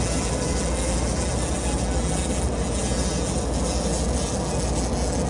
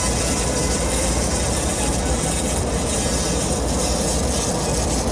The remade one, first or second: second